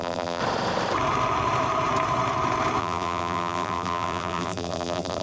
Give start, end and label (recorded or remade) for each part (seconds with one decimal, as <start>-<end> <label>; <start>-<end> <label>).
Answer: 0.0-0.4 remade; 0.4-2.8 recorded; 2.8-5.2 remade